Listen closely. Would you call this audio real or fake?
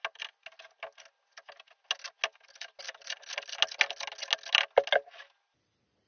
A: real